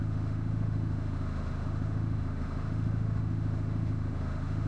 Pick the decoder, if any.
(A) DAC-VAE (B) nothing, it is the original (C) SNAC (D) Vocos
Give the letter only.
A